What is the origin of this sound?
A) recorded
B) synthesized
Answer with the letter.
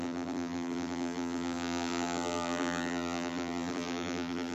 B